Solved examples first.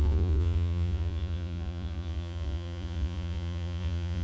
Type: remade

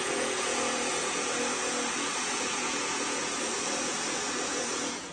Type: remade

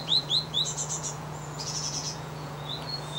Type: remade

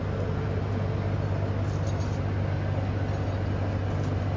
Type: recorded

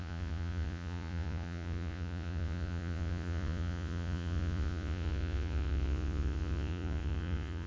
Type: remade